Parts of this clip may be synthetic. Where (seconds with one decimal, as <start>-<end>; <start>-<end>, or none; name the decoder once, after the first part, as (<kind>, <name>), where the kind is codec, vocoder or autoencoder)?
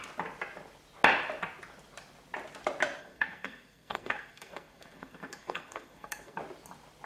3.0-6.4 (codec, SNAC)